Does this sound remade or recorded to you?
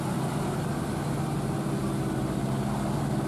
recorded